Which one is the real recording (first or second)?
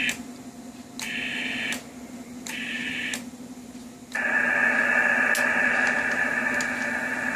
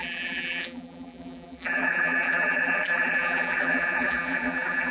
first